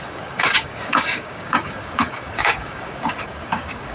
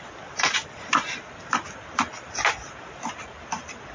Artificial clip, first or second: first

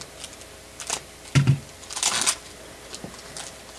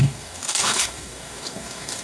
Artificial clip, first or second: second